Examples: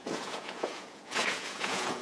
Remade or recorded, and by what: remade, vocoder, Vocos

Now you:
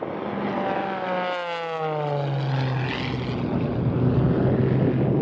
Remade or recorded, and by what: recorded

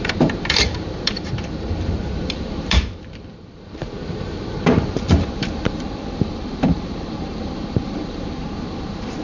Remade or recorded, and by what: remade, vocoder, BigVGAN v2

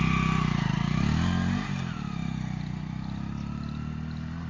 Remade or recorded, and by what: recorded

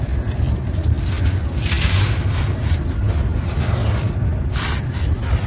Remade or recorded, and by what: recorded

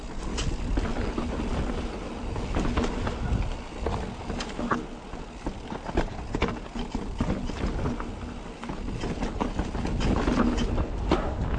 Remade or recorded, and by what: recorded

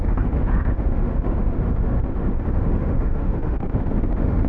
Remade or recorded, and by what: remade, autoencoder, DAC-VAE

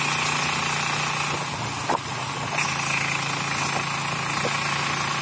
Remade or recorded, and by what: recorded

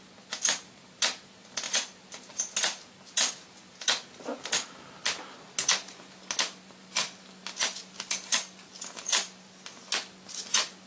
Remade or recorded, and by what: recorded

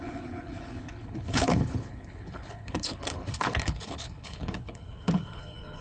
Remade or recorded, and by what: remade, codec, HILCodec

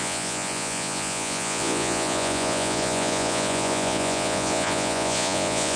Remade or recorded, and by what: remade, vocoder, Vocos